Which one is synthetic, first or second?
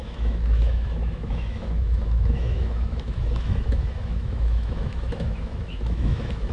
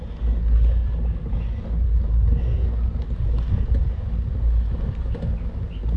first